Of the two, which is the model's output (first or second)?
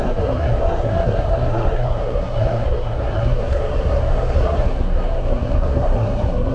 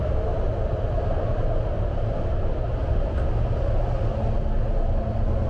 first